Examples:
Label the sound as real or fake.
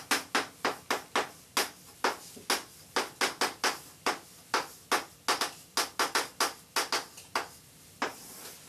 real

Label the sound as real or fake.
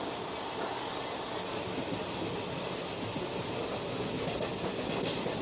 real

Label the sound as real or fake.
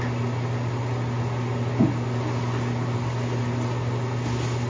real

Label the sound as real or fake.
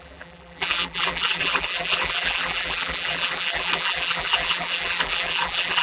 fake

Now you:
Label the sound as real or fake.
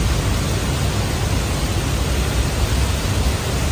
real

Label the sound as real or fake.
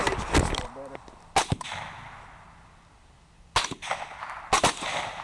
real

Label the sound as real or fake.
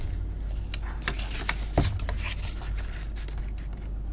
real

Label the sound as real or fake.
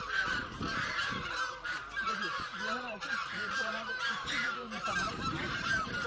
fake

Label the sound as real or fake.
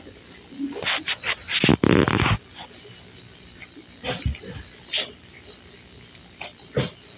real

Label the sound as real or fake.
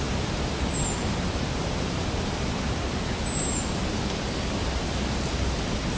real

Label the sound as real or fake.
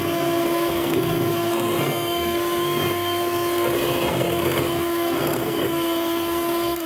fake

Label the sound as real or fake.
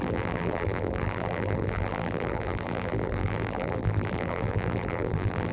fake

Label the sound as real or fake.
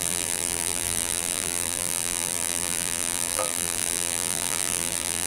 fake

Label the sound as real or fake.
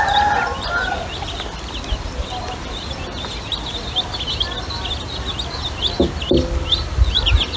real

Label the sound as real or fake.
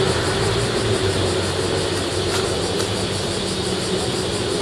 real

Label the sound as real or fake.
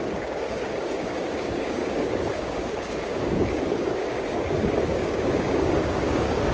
fake